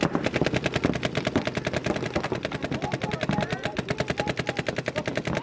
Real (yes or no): yes